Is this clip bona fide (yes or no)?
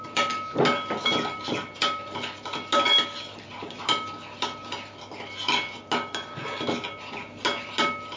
yes